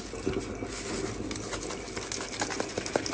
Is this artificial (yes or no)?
no